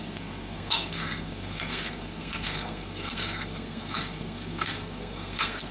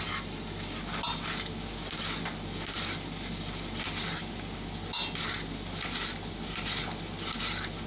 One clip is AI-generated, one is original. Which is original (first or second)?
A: second